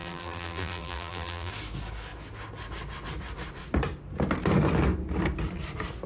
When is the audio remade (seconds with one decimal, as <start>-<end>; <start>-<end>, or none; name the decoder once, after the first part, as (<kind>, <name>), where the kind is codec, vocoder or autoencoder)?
0.0-1.5 (vocoder, BigVGAN v2)